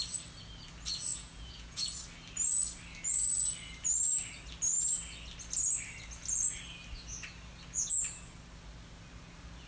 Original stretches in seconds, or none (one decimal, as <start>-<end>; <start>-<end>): 0.0-1.1; 2.0-9.7